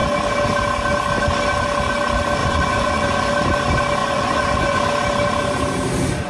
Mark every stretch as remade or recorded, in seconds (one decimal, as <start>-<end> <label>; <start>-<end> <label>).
0.0-2.4 recorded; 2.4-3.3 remade; 3.3-4.0 recorded; 4.0-4.8 remade; 4.8-6.3 recorded